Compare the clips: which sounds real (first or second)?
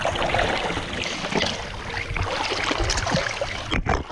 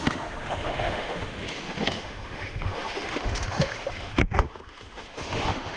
first